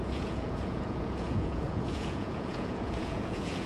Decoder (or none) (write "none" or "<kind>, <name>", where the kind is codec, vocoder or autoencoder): vocoder, Vocos